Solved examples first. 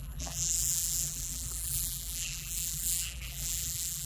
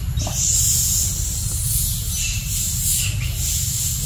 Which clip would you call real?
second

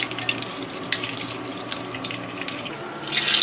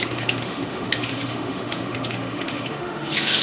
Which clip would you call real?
first